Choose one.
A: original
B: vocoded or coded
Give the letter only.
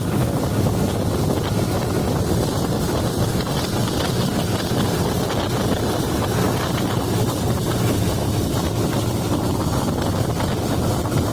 A